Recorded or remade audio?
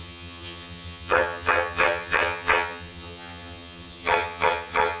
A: remade